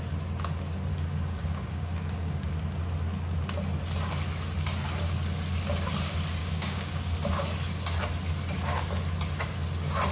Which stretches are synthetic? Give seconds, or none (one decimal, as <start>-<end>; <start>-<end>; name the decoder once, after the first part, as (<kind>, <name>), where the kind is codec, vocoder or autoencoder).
0.9-2.6 (codec, DAC); 6.4-6.9